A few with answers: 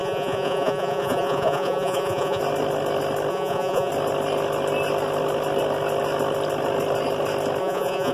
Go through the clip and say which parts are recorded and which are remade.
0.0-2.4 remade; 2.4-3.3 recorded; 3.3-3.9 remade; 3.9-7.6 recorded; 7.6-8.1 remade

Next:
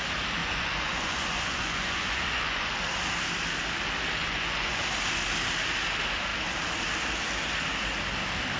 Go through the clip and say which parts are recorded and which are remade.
0.0-0.4 recorded; 0.4-2.7 remade; 2.7-4.2 recorded; 4.2-4.8 remade; 4.8-8.6 recorded